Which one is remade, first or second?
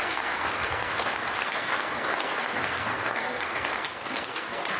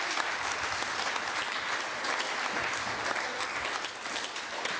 first